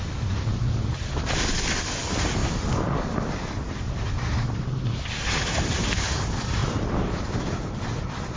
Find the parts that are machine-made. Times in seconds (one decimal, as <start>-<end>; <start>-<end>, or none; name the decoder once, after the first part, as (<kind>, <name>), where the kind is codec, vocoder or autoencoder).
none